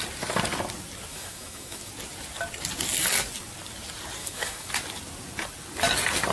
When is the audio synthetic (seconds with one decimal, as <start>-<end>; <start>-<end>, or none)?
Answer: 1.1-1.9; 4.2-4.7